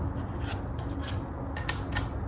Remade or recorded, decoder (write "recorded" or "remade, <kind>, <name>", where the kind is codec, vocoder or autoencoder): recorded